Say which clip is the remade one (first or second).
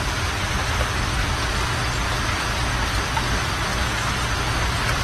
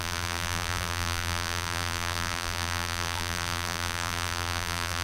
second